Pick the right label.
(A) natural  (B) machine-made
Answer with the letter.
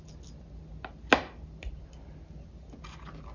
A